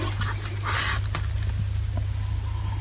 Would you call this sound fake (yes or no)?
no